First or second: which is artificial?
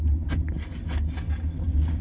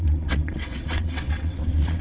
second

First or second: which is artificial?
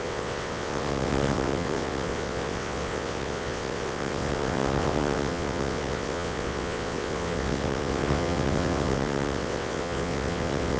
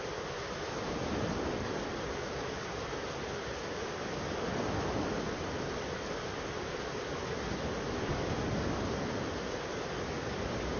first